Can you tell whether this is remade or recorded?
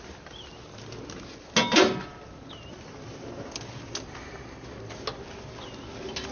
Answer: recorded